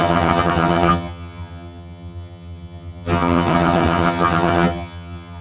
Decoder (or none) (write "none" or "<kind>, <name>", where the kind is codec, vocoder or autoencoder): vocoder, HiFi-GAN